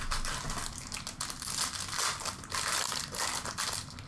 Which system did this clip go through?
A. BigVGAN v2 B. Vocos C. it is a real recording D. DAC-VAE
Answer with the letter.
C